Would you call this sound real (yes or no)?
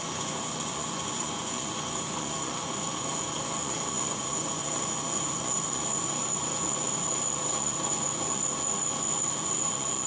no